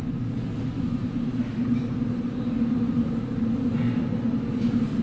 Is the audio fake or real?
real